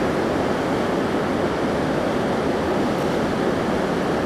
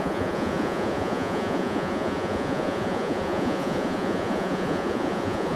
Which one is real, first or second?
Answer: first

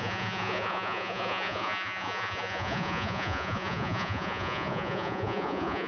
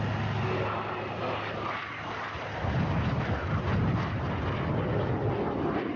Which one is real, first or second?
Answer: second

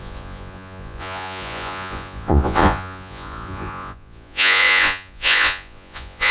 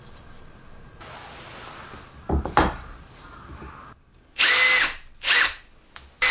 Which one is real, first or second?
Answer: second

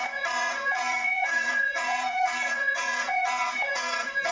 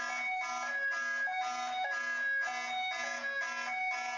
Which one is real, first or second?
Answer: second